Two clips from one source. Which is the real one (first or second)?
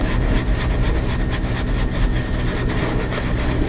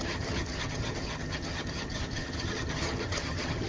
first